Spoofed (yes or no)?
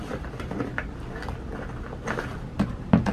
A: no